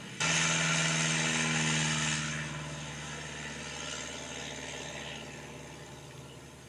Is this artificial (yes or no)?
no